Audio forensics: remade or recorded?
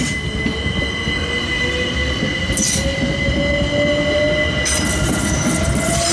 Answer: recorded